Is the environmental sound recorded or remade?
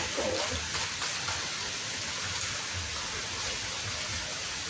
recorded